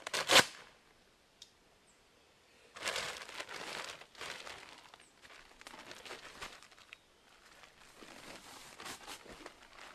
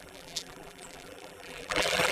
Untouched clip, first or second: first